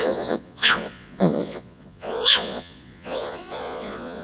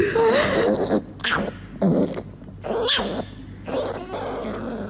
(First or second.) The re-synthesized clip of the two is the first